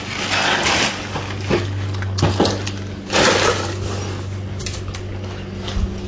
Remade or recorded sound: recorded